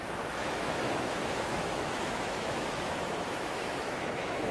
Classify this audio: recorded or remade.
remade